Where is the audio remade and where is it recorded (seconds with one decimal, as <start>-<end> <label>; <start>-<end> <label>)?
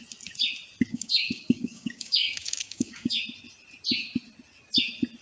0.0-0.9 recorded; 0.9-3.2 remade; 3.2-5.2 recorded